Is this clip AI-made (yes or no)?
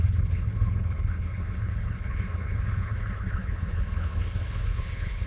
yes